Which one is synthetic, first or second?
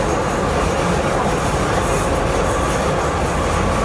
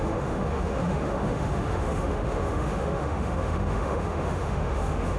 second